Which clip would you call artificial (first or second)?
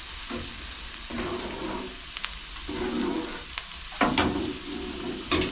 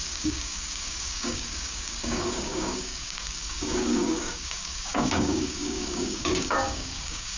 second